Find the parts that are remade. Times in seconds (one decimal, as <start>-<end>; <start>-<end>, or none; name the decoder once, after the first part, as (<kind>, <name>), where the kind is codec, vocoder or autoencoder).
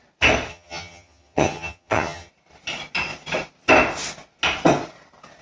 0.5-2.3 (vocoder, HiFi-GAN)